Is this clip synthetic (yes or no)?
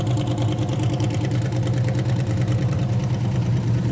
yes